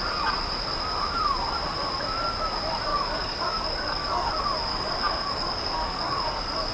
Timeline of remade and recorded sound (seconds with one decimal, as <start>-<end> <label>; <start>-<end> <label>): 0.0-2.9 recorded; 2.9-4.3 remade; 4.3-4.7 recorded; 4.7-6.7 remade